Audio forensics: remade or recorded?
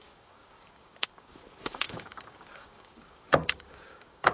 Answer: remade